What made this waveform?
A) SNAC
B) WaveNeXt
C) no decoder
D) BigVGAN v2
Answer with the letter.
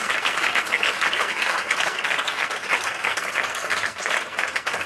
A